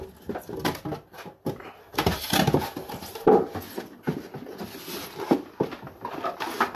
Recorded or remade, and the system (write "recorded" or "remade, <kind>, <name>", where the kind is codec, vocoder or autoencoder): recorded